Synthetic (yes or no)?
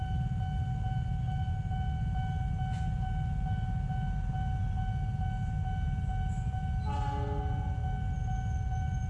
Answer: no